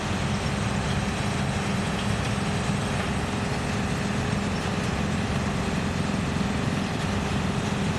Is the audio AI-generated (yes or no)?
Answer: no